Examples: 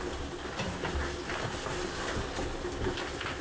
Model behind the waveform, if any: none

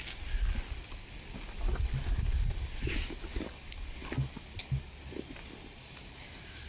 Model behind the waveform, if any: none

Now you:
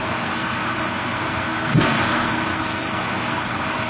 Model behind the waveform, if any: codec, SNAC